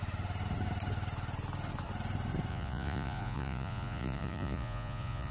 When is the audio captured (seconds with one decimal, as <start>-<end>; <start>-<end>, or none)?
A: 0.0-2.5